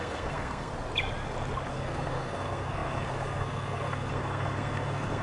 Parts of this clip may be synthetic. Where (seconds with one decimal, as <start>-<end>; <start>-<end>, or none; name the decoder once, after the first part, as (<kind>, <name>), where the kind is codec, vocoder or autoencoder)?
0.0-0.7 (codec, SNAC); 1.7-5.2